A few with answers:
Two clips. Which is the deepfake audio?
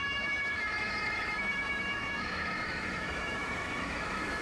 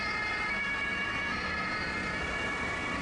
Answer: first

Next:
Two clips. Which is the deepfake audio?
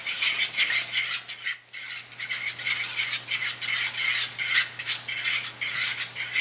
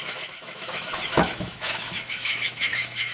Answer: second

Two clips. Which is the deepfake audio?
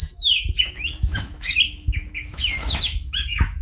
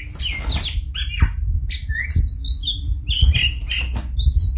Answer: first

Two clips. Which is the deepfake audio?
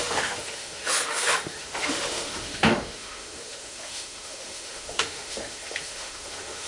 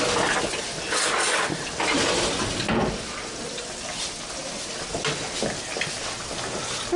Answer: first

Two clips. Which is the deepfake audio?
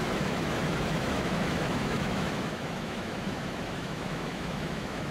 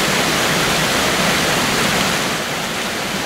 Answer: first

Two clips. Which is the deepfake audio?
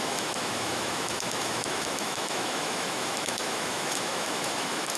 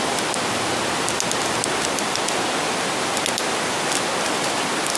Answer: first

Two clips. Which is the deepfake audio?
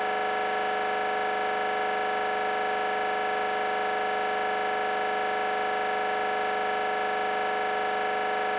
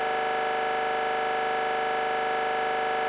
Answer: second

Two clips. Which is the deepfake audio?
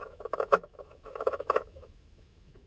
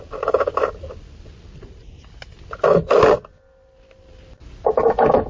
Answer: first